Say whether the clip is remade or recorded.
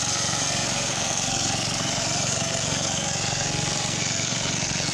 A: remade